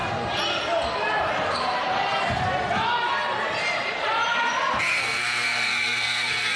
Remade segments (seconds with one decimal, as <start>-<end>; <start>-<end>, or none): 5.0-6.6